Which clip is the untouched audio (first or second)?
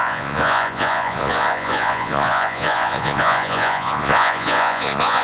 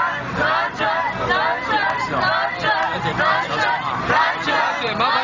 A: second